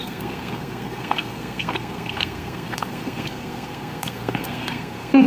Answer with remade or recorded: remade